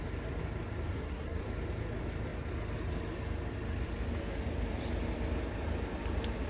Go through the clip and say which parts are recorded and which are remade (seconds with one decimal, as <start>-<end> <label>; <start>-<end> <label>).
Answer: 0.0-0.9 recorded; 0.9-1.4 remade; 1.4-6.5 recorded